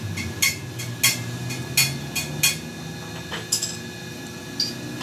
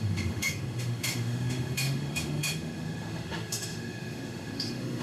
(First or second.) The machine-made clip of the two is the second